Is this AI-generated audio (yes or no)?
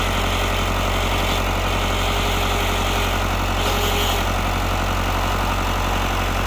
no